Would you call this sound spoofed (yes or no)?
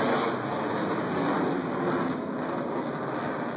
no